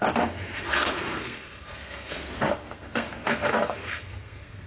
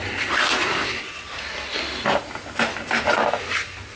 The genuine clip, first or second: second